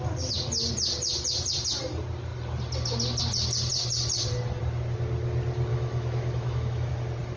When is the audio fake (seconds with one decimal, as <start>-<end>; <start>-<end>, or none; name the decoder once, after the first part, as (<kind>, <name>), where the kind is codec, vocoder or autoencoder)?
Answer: 5.7-6.9 (autoencoder, DAC-VAE)